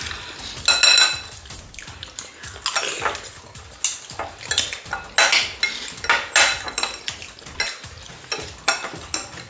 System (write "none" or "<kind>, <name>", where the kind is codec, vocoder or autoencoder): none